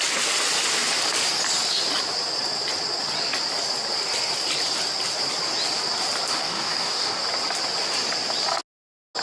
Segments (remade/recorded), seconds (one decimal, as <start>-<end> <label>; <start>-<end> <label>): 0.0-6.3 recorded; 6.3-7.2 remade; 7.2-9.2 recorded